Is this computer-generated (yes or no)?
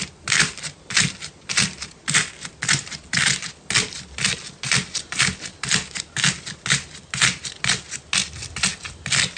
no